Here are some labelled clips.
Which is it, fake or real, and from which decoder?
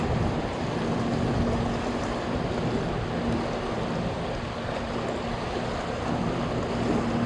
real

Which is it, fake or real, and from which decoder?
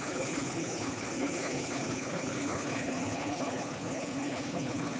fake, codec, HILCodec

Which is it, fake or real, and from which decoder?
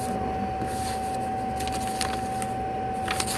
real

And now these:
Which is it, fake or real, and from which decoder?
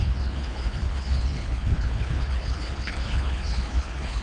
fake, codec, HILCodec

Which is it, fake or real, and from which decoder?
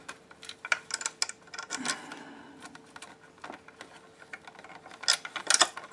real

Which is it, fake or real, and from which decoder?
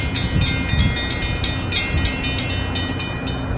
real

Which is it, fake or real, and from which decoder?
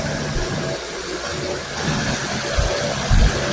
real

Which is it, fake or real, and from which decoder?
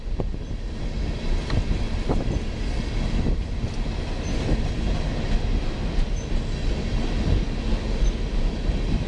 real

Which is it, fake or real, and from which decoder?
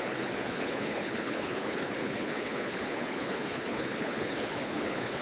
fake, codec, HILCodec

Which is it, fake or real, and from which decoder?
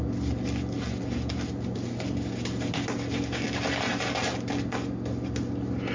real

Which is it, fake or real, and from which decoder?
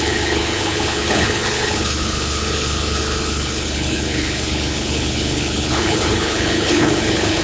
fake, codec, HILCodec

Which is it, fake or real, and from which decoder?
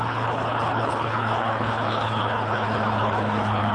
fake, codec, HILCodec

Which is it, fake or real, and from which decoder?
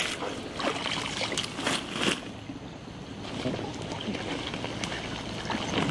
real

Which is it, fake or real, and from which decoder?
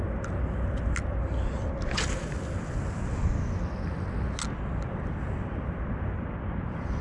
real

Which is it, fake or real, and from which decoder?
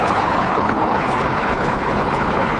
fake, codec, HILCodec